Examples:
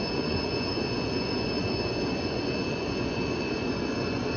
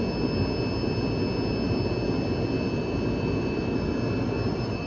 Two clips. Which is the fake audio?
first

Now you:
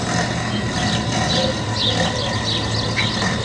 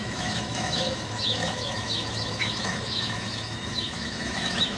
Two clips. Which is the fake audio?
second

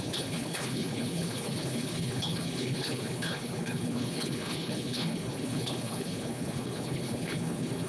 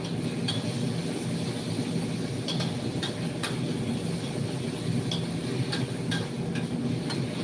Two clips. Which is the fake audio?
first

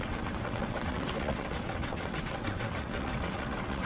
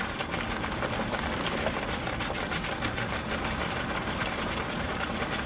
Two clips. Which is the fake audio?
first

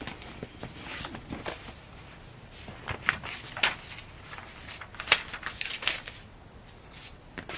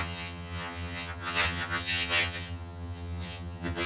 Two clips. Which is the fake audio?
second